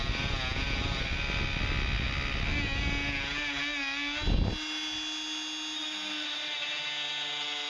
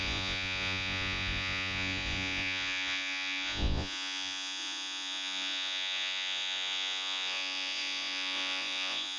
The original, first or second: first